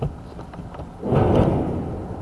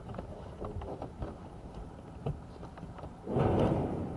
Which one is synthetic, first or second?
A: second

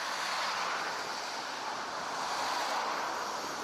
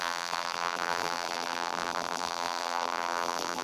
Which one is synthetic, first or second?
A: second